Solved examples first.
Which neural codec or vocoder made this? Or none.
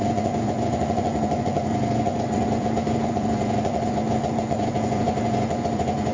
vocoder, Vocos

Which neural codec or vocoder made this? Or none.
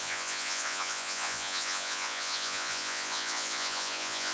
vocoder, Vocos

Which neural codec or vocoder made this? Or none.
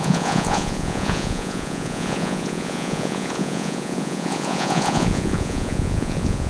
vocoder, Vocos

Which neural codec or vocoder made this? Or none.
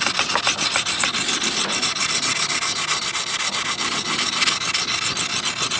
none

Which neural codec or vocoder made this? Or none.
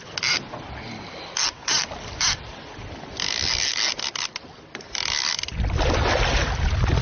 none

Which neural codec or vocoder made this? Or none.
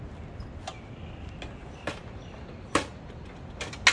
none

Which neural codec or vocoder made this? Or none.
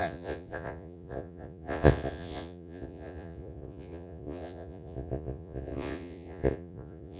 vocoder, Vocos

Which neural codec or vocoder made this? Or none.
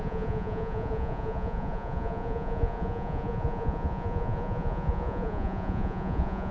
vocoder, Vocos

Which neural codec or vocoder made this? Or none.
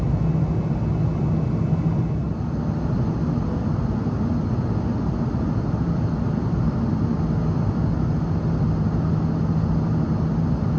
none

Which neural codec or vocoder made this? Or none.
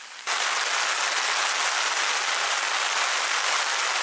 none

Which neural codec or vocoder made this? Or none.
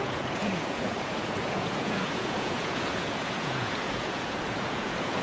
vocoder, Vocos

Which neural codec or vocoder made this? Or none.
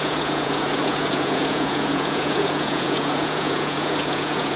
vocoder, Vocos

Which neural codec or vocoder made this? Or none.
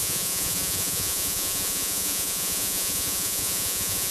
vocoder, Vocos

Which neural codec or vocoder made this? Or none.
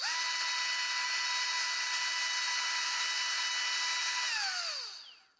none